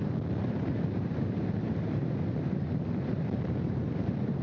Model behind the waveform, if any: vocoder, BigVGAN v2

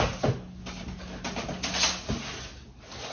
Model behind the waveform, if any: none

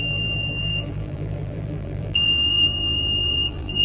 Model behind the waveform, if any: vocoder, BigVGAN v2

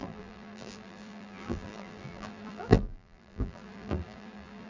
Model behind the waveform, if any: vocoder, BigVGAN v2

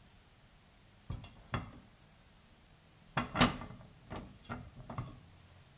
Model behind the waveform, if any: none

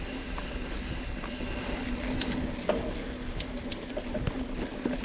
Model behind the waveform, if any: none